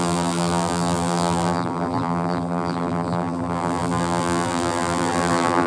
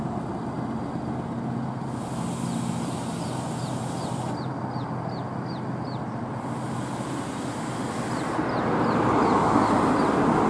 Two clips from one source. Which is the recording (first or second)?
second